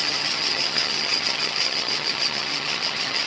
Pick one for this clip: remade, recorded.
remade